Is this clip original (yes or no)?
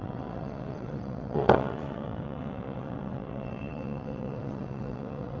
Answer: no